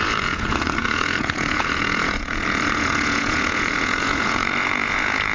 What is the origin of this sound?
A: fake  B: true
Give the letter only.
A